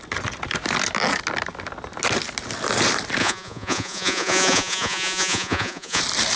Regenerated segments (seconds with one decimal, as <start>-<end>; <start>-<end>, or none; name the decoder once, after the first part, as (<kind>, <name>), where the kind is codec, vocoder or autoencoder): 3.2-6.0 (vocoder, Vocos)